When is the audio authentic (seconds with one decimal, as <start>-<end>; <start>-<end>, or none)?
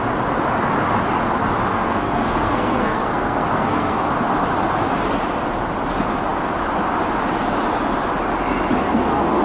0.0-1.7; 4.1-8.8